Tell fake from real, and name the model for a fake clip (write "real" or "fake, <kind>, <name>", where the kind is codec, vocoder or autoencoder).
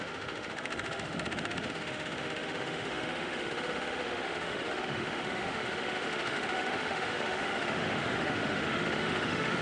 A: fake, autoencoder, DAC-VAE